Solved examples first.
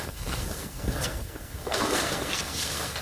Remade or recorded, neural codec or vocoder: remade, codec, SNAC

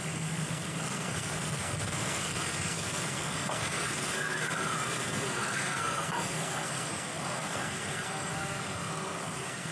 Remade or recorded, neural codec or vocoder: remade, codec, SNAC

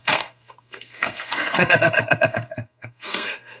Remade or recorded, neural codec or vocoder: remade, codec, SNAC